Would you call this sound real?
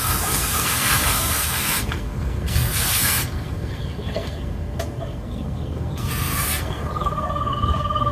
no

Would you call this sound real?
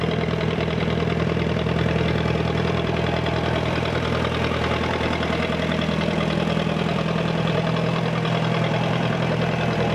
no